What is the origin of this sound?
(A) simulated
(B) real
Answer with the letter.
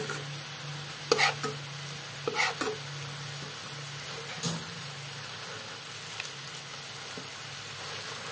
B